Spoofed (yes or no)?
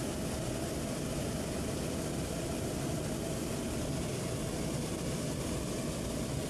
no